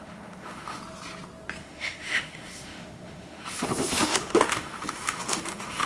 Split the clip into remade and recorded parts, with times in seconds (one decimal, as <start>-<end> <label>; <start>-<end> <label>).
0.0-0.8 remade; 0.8-1.6 recorded; 1.6-5.9 remade